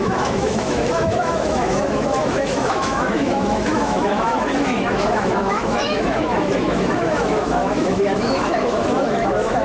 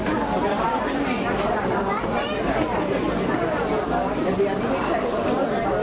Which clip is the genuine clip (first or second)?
second